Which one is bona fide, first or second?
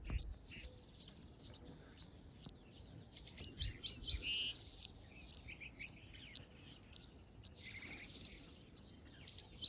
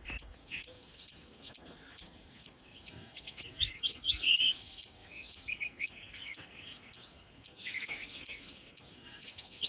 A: first